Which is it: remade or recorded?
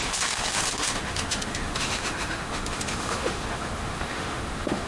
remade